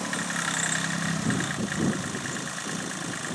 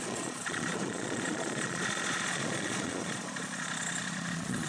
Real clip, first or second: first